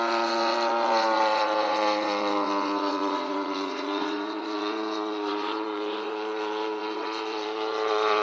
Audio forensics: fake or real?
fake